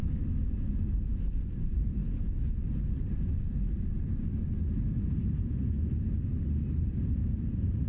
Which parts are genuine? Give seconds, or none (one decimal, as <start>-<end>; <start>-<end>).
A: 0.0-0.7; 2.0-6.7